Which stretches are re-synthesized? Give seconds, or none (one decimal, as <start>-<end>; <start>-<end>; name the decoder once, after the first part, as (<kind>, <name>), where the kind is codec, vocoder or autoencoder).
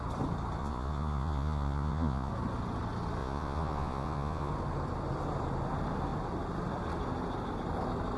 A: 0.6-2.3 (vocoder, Vocos); 3.2-4.5